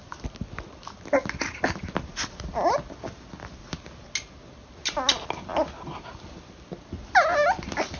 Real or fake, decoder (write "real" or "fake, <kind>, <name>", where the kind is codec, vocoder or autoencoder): real